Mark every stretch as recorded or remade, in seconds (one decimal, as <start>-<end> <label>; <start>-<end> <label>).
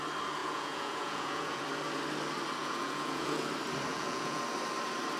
0.0-0.4 recorded; 0.4-1.6 remade; 1.6-2.6 recorded; 2.6-3.5 remade; 3.5-3.9 recorded; 3.9-4.4 remade; 4.4-5.2 recorded